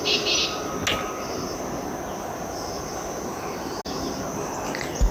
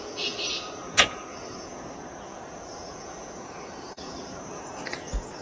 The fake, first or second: second